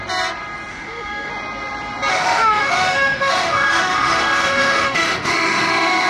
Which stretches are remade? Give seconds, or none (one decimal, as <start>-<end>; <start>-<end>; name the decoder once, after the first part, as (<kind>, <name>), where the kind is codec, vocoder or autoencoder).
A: 0.7-1.3 (autoencoder, DAC-VAE); 2.1-6.1